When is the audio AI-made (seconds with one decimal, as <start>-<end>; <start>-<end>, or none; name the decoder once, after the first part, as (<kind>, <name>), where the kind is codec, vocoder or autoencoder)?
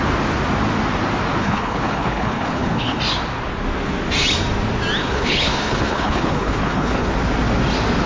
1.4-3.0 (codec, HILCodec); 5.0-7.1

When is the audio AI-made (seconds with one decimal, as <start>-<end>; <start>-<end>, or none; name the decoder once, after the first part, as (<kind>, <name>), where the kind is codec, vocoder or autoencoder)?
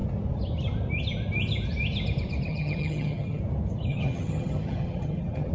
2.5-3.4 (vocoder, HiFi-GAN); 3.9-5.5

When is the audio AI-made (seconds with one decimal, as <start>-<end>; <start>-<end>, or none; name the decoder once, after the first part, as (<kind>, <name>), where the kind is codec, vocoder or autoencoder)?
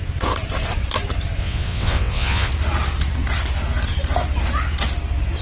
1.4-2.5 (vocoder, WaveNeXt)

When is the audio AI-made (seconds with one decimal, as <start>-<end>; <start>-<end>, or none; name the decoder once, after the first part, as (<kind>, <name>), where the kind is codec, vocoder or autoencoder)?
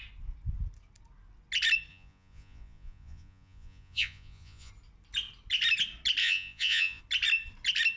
1.9-4.7 (vocoder, Vocos); 6.2-7.0